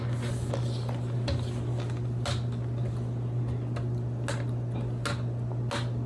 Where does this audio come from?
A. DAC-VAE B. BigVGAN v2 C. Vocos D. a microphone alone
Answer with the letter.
D